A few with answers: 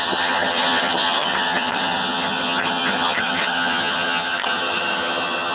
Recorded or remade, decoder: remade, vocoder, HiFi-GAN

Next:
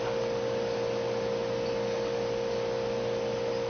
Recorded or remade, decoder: recorded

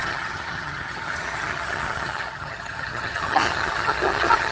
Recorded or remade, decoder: remade, vocoder, HiFi-GAN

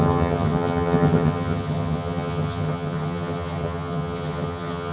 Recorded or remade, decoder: remade, vocoder, HiFi-GAN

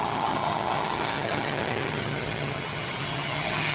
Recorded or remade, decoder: remade, vocoder, HiFi-GAN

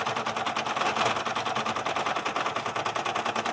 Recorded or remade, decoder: recorded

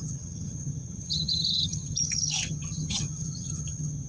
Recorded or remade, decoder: remade, vocoder, HiFi-GAN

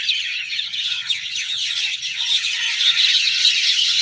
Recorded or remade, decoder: remade, vocoder, HiFi-GAN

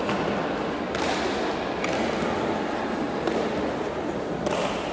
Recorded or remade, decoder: recorded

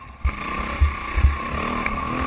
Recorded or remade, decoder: recorded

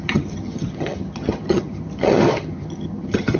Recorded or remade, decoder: remade, vocoder, HiFi-GAN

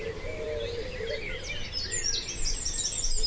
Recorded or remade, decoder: recorded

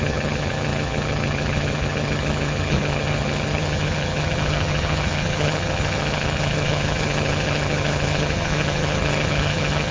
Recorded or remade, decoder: remade, vocoder, HiFi-GAN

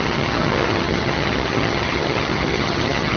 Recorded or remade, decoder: remade, vocoder, HiFi-GAN